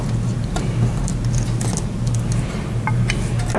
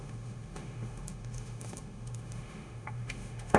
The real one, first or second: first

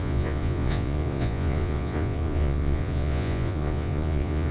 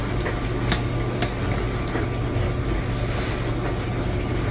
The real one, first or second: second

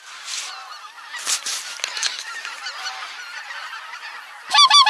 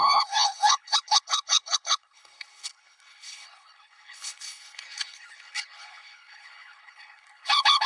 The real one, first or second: first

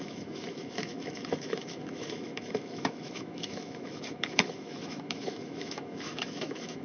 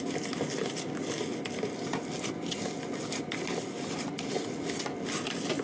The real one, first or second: second